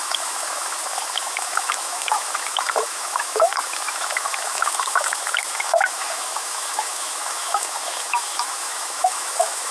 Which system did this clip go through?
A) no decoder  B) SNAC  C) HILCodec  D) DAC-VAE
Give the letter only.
D